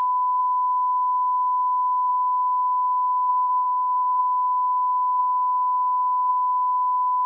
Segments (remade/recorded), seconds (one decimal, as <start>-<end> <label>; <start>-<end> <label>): 0.0-3.3 recorded; 3.3-4.2 remade; 4.2-7.3 recorded